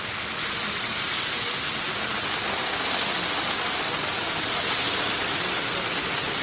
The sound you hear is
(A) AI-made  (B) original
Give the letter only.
B